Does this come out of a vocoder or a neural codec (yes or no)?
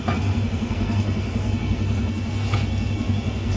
yes